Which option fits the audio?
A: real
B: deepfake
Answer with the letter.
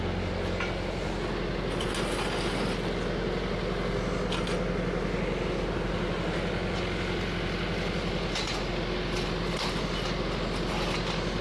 A